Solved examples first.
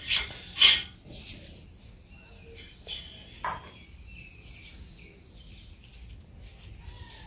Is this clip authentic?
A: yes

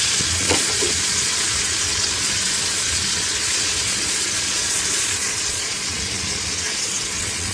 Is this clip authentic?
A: no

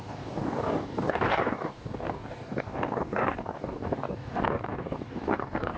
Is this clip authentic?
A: no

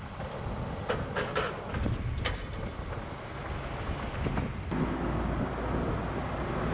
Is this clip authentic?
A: yes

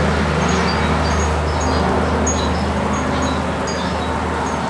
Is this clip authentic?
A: yes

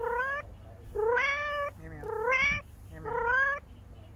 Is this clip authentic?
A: yes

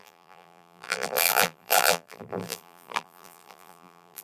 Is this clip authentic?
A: no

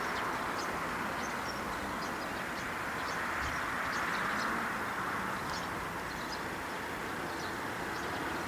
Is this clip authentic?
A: yes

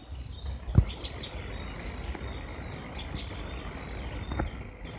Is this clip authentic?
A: yes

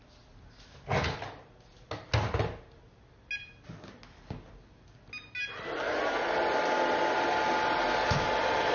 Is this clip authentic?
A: yes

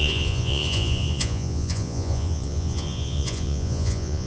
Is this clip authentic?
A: no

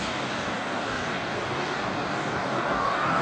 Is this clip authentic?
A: no